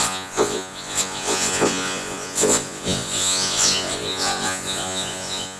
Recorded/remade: remade